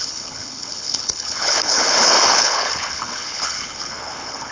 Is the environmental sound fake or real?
fake